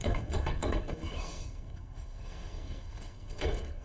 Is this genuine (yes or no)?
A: no